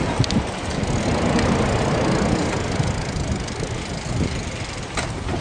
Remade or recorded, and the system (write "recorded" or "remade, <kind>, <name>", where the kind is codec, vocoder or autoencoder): recorded